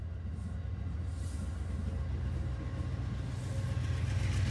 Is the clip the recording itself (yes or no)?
yes